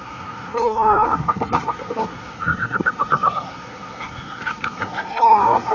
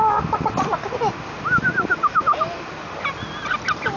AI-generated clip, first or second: first